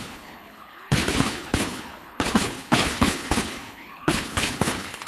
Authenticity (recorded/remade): remade